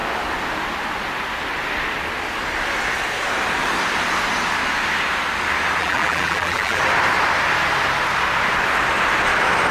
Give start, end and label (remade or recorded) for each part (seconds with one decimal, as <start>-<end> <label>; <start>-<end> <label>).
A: 0.0-5.8 recorded; 5.8-6.8 remade; 6.8-9.7 recorded